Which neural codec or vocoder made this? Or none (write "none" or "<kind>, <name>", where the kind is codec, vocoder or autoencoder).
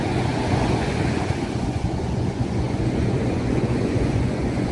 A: vocoder, Vocos